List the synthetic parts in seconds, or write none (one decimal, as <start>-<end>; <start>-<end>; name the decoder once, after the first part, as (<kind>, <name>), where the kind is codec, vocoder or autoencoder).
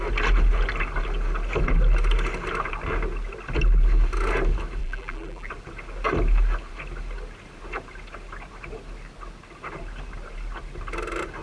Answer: 4.8-5.5 (vocoder, BigVGAN v2)